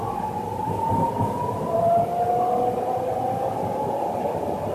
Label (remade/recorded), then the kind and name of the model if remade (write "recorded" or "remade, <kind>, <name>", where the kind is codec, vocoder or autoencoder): recorded